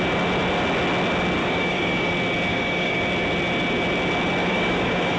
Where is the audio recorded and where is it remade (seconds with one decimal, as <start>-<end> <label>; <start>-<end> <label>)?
0.0-1.4 recorded; 1.4-2.1 remade; 2.1-2.5 recorded; 2.5-3.0 remade; 3.0-4.4 recorded; 4.4-5.2 remade